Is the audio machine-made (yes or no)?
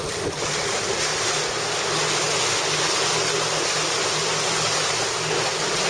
no